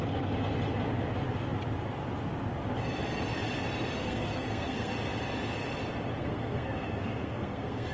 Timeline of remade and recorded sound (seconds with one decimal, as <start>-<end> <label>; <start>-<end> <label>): 0.0-4.0 recorded; 4.0-4.9 remade; 4.9-6.2 recorded; 6.2-7.9 remade